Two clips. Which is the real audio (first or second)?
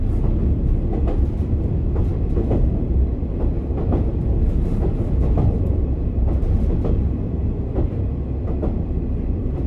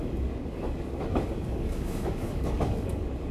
first